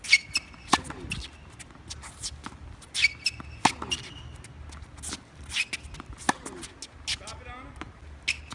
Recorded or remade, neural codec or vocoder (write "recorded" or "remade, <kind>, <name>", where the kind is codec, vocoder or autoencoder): recorded